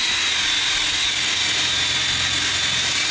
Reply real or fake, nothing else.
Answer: real